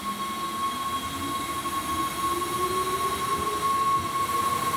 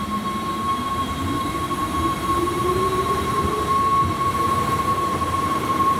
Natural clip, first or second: first